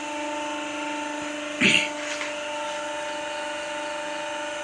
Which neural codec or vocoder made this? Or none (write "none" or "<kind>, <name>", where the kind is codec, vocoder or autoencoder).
none